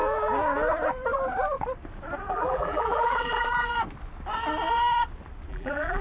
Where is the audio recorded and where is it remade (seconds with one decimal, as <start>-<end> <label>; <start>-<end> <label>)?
0.0-2.3 recorded; 2.3-3.7 remade; 3.7-5.5 recorded; 5.5-6.0 remade